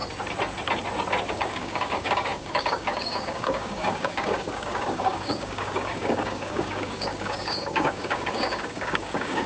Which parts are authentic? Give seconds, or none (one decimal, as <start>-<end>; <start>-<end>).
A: 0.0-1.3